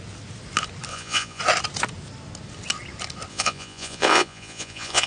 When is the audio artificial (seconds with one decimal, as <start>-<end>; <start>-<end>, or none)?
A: 0.9-1.4; 3.3-5.1